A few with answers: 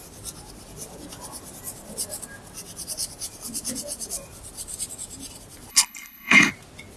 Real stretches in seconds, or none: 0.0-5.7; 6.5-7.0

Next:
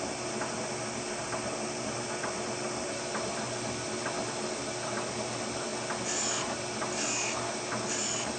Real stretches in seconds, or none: 0.0-8.4

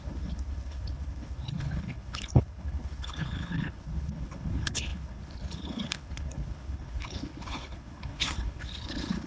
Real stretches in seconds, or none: none

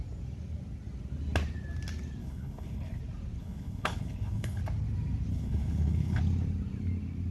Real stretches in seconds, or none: 0.0-2.2; 3.0-3.4; 4.6-5.3; 6.2-7.3

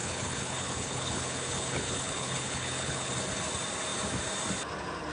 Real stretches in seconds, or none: 3.1-5.1